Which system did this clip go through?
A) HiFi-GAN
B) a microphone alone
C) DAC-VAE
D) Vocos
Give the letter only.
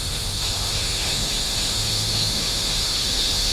C